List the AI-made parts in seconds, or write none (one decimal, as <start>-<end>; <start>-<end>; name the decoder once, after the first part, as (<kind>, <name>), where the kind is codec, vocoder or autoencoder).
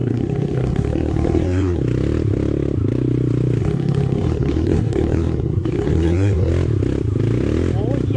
0.0-1.8 (codec, SNAC); 3.6-6.5